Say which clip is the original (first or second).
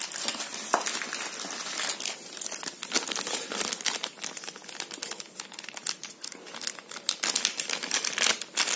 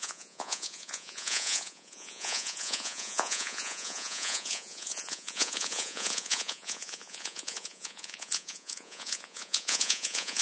first